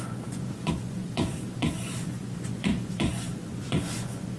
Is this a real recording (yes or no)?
no